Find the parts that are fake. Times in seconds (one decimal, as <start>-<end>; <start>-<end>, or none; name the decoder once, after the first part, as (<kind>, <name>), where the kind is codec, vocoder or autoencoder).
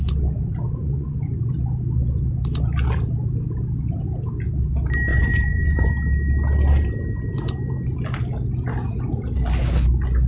0.8-1.5 (vocoder, Vocos); 5.1-5.9